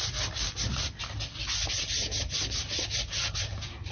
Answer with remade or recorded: recorded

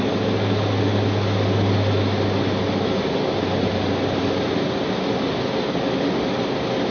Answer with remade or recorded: recorded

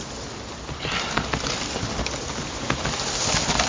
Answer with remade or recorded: recorded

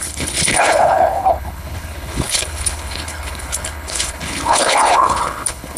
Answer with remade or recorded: remade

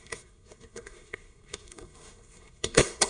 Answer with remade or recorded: remade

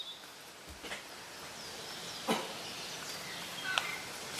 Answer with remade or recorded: recorded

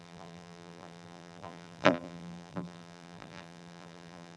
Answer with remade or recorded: remade